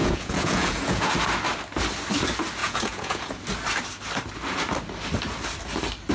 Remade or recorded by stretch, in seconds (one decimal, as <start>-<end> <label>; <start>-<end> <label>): 0.0-1.1 remade; 1.1-2.6 recorded; 2.6-3.4 remade; 3.4-6.1 recorded